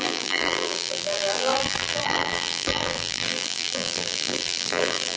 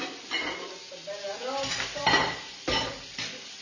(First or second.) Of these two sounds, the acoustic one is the second